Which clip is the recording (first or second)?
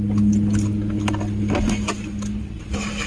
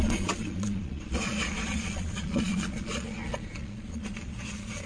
first